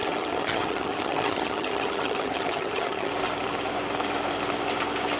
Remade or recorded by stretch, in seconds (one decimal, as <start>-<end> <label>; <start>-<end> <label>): 0.0-3.1 remade; 3.1-5.2 recorded